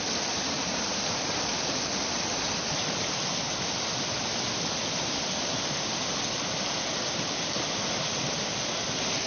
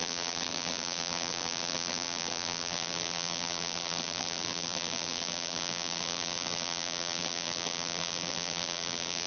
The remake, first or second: second